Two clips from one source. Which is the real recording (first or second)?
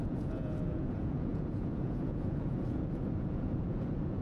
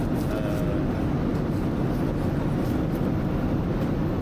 second